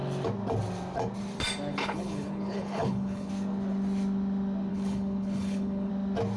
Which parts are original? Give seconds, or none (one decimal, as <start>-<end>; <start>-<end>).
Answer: 0.0-1.8; 3.3-4.7; 5.9-6.4